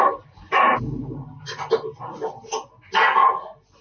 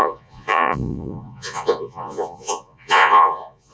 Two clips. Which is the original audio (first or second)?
first